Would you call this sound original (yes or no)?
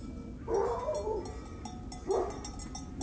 yes